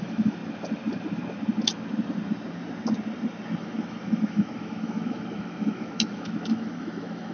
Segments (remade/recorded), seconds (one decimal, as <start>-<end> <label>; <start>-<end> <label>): 0.0-0.4 remade; 0.4-3.6 recorded; 3.6-7.3 remade